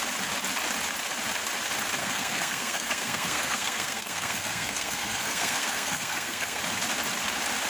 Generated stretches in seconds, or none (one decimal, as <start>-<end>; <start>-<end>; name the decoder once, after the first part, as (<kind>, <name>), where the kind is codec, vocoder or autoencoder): 2.0-6.6 (codec, SNAC)